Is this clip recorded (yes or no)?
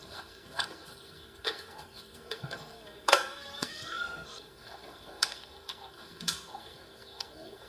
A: no